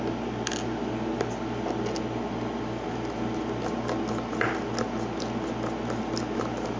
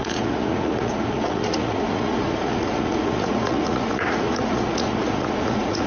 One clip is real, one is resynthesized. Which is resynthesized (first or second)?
second